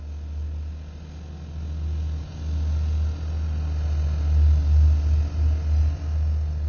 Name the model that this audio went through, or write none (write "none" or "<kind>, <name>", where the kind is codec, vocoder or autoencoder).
none